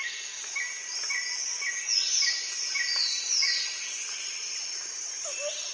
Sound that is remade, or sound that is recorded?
recorded